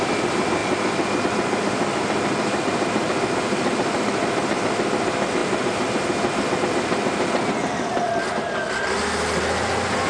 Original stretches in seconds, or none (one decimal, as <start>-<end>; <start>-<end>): 0.0-10.1